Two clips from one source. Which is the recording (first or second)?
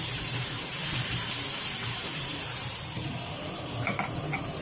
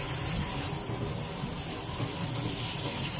second